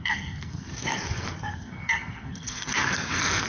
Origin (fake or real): fake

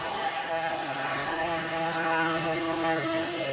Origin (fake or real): fake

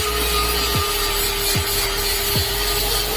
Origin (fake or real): real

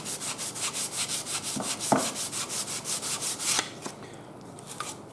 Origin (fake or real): real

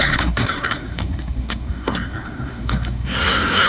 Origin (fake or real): fake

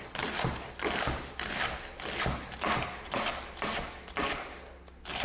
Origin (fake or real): real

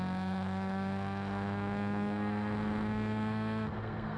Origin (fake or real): fake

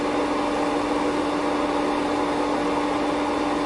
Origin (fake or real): real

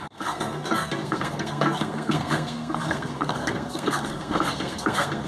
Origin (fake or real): fake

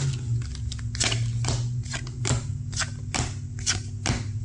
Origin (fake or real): real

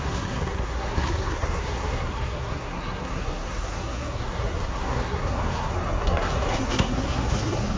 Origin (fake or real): fake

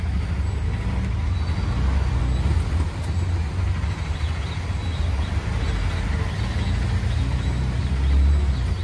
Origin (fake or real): real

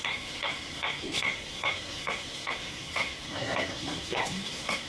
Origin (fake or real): fake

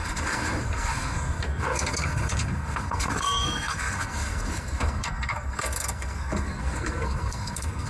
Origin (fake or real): fake